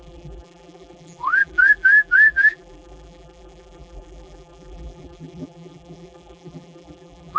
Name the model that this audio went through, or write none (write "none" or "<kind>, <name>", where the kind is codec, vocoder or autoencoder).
vocoder, BigVGAN v2